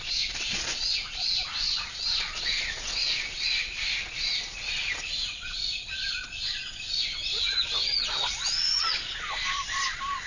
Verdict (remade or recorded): remade